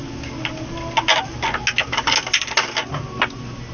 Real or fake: real